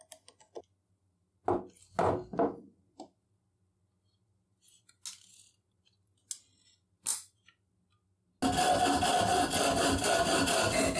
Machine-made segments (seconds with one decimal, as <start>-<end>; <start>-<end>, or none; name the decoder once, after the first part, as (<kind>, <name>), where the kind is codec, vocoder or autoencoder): none